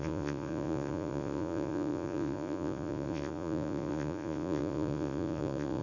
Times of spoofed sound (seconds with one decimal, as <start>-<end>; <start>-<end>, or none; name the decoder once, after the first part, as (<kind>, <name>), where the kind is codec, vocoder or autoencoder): 0.0-5.8 (vocoder, Vocos)